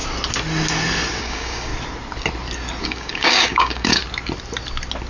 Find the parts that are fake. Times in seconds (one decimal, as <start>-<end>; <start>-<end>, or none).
1.2-1.7; 2.8-4.0